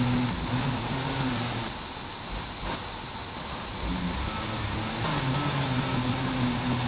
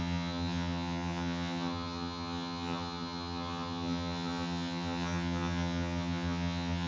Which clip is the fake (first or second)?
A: second